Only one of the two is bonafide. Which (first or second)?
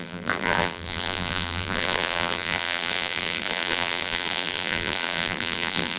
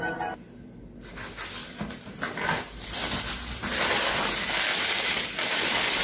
second